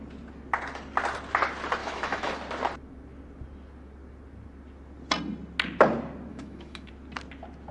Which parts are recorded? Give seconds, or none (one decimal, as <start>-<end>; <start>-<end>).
0.0-1.8; 2.3-6.3; 6.9-7.7